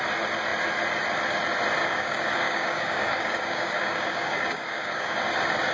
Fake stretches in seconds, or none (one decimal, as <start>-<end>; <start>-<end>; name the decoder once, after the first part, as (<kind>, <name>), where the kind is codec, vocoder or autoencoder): 1.8-5.2 (codec, DAC)